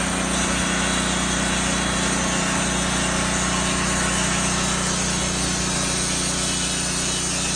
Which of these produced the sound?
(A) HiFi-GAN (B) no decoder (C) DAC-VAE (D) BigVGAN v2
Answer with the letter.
B